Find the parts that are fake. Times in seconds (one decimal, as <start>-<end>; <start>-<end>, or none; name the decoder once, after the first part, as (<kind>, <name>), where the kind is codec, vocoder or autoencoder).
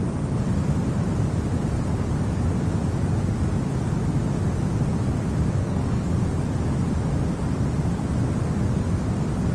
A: 5.6-6.1 (codec, SNAC)